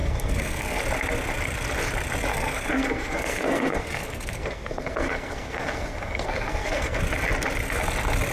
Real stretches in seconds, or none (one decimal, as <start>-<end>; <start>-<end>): 0.8-2.3; 7.0-8.3